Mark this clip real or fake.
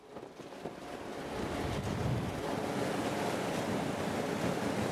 real